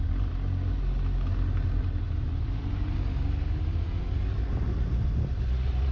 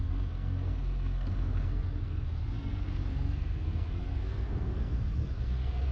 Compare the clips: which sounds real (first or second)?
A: first